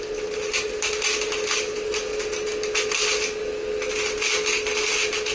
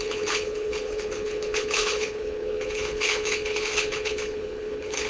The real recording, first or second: first